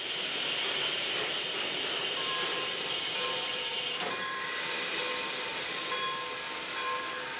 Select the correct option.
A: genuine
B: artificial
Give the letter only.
B